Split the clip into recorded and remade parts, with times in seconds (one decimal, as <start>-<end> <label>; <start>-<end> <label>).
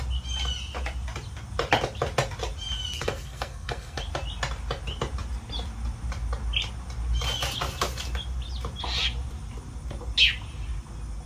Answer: 0.0-2.9 recorded; 2.9-4.0 remade; 4.0-11.3 recorded